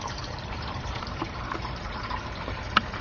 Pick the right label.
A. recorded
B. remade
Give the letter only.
B